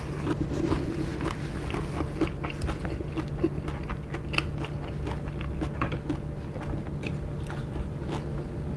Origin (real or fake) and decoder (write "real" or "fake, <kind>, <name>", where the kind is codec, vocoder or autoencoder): real